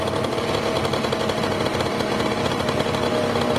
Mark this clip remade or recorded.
recorded